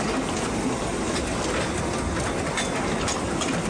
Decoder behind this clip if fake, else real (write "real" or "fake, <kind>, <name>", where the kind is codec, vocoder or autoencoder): real